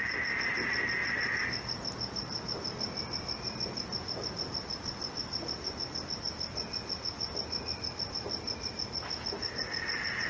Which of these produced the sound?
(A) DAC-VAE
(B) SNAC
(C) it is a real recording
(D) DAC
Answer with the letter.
C